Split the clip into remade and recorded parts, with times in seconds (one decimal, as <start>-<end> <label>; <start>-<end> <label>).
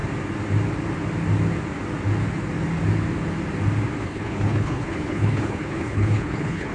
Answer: 0.0-4.0 recorded; 4.0-6.7 remade